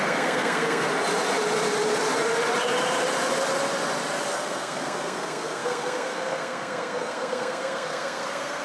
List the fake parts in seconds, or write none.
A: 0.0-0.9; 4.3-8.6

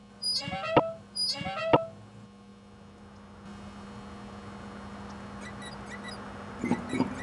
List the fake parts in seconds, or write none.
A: none

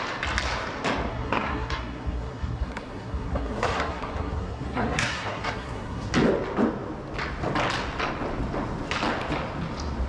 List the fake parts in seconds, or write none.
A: 1.1-6.1